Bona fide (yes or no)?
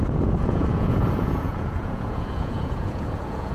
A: no